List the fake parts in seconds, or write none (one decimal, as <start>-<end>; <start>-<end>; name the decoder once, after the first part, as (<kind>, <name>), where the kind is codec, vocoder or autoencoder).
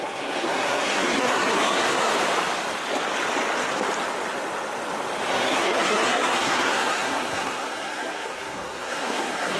0.0-2.1 (codec, SNAC); 5.3-9.6